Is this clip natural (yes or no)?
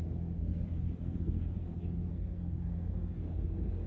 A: no